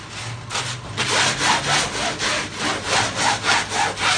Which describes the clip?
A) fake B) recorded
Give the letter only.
B